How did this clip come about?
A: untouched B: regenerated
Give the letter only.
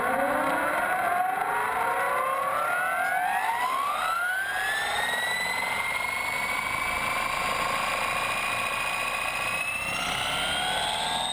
A